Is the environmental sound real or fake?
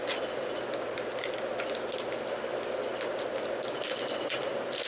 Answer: real